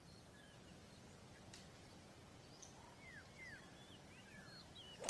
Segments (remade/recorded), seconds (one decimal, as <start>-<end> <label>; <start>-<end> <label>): 0.0-5.1 recorded

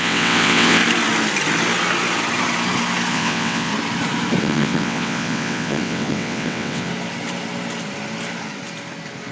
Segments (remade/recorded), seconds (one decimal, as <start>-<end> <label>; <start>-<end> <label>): 0.0-0.8 remade; 0.8-3.1 recorded; 3.1-3.7 remade; 3.7-4.4 recorded; 4.4-6.9 remade; 6.9-9.3 recorded

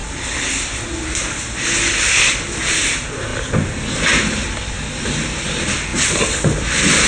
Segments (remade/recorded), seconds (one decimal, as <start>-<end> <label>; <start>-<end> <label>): 0.0-7.1 recorded

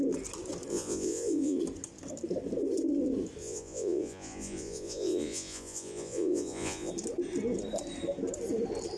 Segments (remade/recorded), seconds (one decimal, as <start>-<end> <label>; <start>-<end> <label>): 0.0-0.7 recorded; 0.7-1.6 remade; 1.6-3.4 recorded; 3.4-6.9 remade; 6.9-9.0 recorded

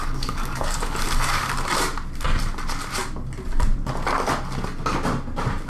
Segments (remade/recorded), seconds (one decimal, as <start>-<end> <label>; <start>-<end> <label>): 0.0-1.5 remade; 1.5-5.7 recorded

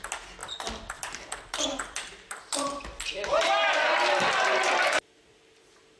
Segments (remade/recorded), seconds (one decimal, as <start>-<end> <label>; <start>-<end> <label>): 0.0-0.4 recorded; 0.4-2.8 remade; 2.8-6.0 recorded

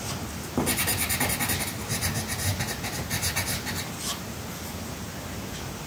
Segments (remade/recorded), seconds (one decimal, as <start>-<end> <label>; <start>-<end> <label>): 0.0-5.9 recorded